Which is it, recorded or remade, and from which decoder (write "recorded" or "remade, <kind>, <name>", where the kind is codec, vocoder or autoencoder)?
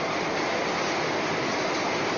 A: recorded